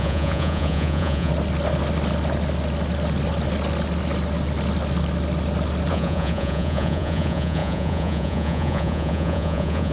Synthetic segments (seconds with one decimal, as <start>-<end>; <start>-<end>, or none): 0.0-1.3; 5.9-9.9